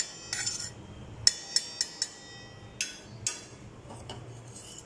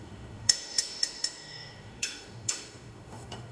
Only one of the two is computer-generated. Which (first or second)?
second